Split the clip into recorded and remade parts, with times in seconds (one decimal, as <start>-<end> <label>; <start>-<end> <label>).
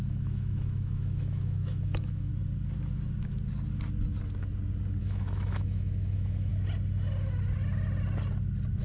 0.0-2.3 remade; 2.3-5.0 recorded; 5.0-6.5 remade; 6.5-8.8 recorded